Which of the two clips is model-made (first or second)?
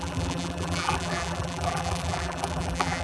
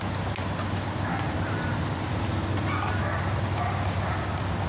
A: first